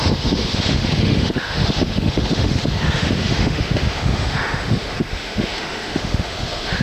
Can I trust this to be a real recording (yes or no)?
no